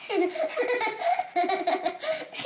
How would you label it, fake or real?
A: real